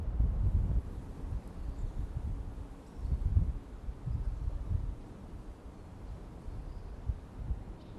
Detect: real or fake real